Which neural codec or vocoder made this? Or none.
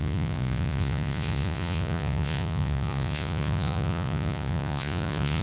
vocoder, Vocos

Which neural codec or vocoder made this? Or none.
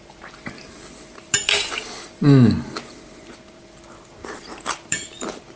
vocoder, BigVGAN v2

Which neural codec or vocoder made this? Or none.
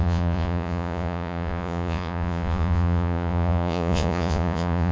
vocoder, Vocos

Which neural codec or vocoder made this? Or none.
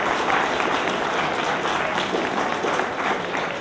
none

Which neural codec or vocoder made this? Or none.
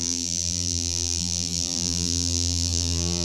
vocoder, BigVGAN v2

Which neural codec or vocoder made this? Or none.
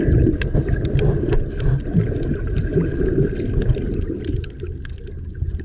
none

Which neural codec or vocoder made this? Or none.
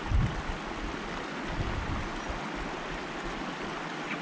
none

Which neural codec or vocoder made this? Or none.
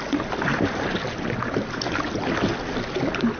none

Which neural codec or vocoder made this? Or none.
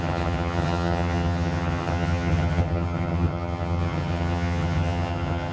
vocoder, HiFi-GAN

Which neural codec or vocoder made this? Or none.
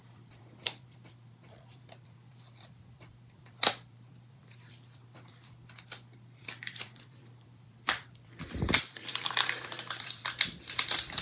vocoder, BigVGAN v2